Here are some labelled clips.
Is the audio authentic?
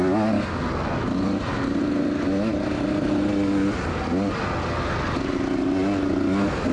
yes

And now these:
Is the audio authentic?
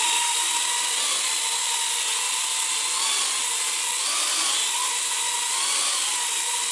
yes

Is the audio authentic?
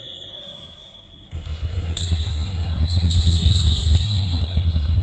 no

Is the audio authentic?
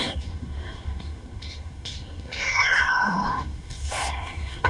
no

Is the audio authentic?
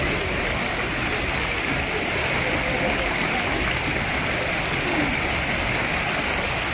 yes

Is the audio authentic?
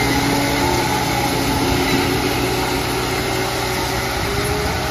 yes